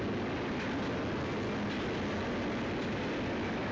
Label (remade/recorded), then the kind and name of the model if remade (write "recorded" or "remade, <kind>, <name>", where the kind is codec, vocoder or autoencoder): recorded